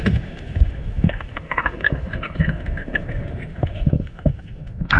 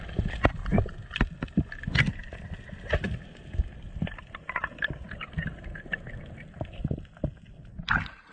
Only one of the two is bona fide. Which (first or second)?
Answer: second